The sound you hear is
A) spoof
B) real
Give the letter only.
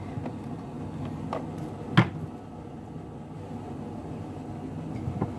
B